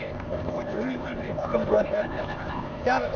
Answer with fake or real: fake